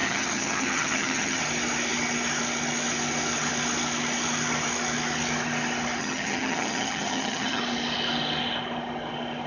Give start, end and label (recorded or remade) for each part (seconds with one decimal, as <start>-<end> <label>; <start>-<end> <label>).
0.0-1.4 remade; 1.4-6.0 recorded; 6.0-7.6 remade; 7.6-9.5 recorded